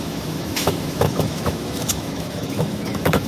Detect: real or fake fake